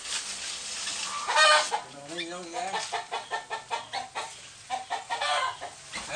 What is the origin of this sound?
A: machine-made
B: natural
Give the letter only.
B